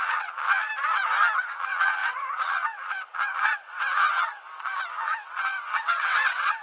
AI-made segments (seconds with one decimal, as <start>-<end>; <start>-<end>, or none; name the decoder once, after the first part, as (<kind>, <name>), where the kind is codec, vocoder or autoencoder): 0.0-0.7 (vocoder, WaveNeXt); 1.4-6.6